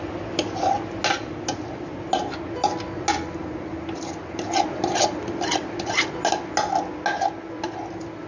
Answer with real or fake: real